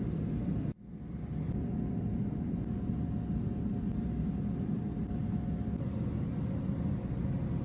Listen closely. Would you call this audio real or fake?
real